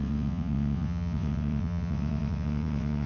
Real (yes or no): no